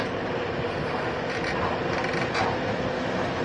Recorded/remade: recorded